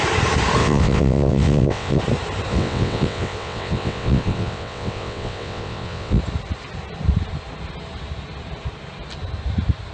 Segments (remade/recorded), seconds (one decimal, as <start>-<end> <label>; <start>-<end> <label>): 0.0-0.6 recorded; 0.6-2.0 remade; 2.0-2.5 recorded; 2.5-6.2 remade; 6.2-9.9 recorded